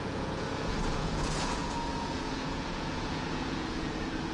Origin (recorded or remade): remade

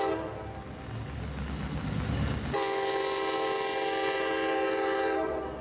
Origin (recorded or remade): recorded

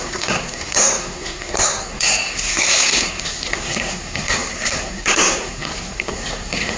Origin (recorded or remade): remade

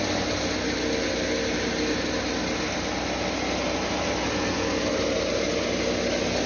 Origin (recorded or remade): recorded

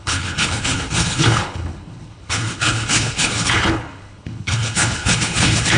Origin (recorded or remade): remade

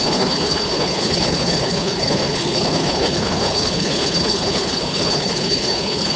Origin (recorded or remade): remade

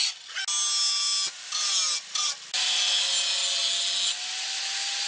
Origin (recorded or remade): recorded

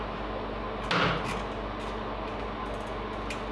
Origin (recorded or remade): recorded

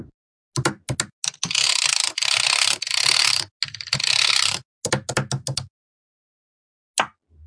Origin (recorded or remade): recorded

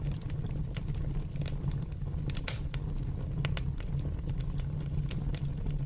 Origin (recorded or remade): recorded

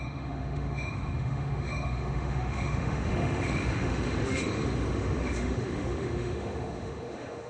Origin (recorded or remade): remade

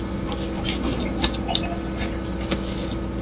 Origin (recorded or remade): recorded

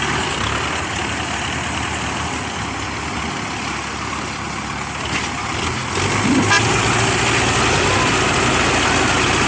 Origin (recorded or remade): recorded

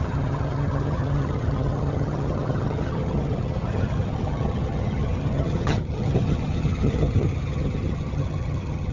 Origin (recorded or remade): remade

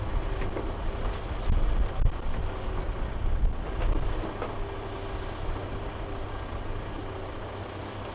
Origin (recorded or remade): recorded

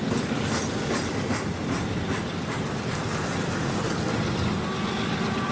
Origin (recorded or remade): recorded